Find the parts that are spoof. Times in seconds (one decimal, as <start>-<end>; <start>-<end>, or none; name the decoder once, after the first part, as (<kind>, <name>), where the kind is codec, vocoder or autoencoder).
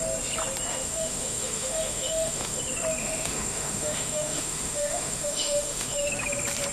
0.7-2.6 (autoencoder, DAC-VAE); 3.0-6.1